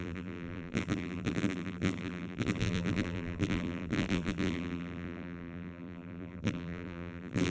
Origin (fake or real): fake